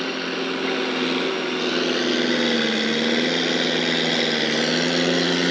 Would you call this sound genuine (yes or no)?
yes